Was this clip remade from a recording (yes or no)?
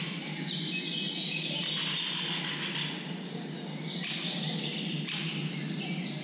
no